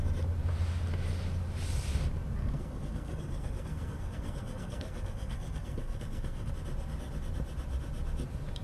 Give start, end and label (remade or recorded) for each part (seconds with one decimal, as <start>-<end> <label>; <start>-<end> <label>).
0.0-2.4 recorded; 2.4-6.5 remade; 6.5-8.6 recorded